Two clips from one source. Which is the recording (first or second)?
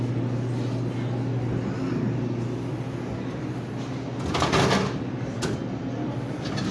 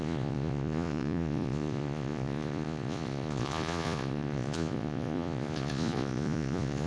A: first